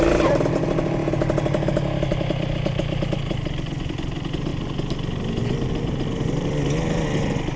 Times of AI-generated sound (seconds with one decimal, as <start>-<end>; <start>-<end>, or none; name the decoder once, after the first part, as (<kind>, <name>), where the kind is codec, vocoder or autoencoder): none